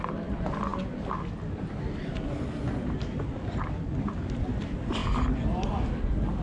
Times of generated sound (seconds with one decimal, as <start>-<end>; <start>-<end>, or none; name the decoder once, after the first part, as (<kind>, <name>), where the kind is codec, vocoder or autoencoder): none